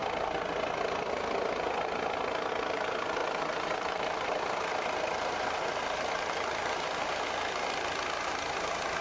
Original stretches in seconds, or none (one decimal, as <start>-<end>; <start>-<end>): 0.0-3.2; 7.1-9.0